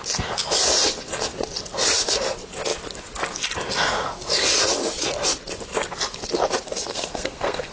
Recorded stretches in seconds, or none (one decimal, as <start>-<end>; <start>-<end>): 0.0-6.9

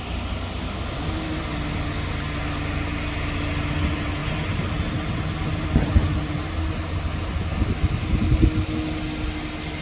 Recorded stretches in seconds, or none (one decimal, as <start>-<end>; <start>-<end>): 0.0-9.8

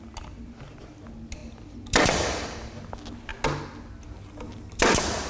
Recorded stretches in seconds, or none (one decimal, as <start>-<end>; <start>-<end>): 0.0-5.3

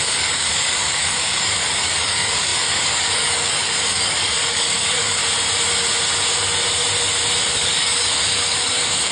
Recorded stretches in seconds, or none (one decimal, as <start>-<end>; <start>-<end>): 5.2-7.5

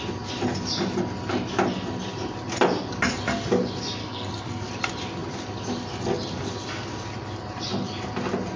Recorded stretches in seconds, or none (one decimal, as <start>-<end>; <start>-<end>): 0.0-4.0; 4.7-8.6

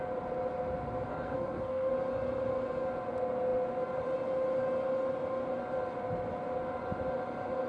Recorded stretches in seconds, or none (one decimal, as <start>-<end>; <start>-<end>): 0.0-1.1; 1.9-7.7

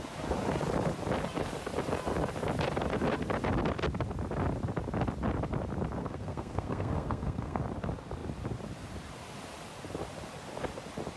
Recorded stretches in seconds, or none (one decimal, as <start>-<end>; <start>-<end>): 0.0-6.0; 7.6-11.2